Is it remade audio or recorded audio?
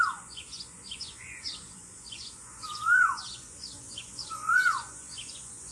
remade